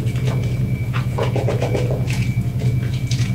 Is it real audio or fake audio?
fake